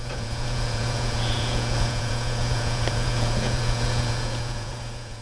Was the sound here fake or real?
fake